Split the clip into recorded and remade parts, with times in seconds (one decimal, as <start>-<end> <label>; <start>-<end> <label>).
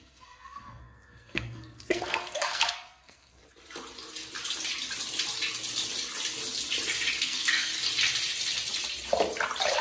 0.0-3.4 remade; 3.4-7.2 recorded; 7.2-7.7 remade; 7.7-9.8 recorded